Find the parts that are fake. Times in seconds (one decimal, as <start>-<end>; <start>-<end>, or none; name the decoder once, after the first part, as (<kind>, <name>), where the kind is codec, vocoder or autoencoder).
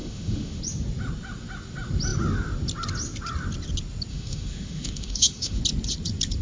0.0-0.6 (autoencoder, DAC-VAE); 4.1-5.6